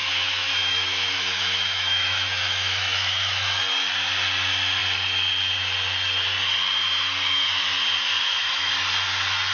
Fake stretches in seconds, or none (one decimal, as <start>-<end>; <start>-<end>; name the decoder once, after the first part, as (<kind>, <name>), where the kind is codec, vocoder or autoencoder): 0.0-3.6 (autoencoder, DAC-VAE); 8.2-8.7